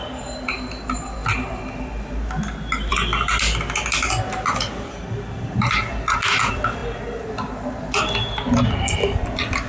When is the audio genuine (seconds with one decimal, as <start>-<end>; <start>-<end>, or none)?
0.0-9.7